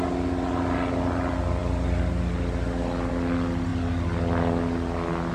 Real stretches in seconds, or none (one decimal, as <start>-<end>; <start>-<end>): 0.0-5.3